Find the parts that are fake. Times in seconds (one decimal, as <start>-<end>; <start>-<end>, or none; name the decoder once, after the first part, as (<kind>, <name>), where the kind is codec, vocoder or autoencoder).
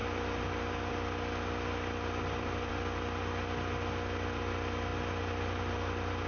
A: none